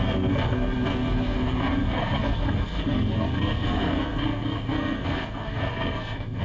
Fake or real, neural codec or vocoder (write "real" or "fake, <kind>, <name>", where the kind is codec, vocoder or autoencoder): fake, codec, SNAC